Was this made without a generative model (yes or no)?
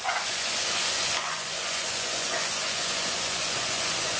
no